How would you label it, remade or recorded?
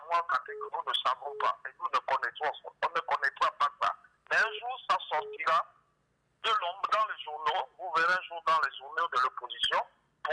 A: recorded